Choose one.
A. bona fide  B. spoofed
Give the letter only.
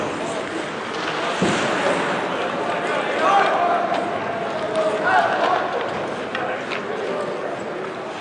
A